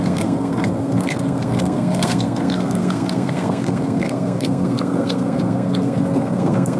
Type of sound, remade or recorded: remade